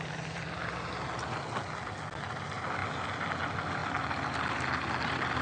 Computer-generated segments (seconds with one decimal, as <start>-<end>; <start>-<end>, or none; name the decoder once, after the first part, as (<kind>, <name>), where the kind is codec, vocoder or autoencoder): none